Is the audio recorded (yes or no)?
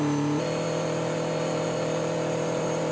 no